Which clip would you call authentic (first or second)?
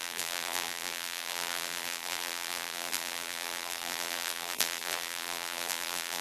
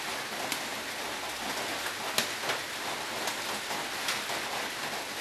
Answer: second